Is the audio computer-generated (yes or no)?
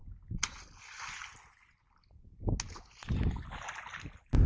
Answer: no